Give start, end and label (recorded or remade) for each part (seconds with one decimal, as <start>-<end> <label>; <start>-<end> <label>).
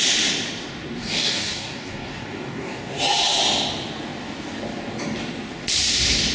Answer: 0.0-1.0 recorded; 1.0-3.0 remade; 3.0-6.3 recorded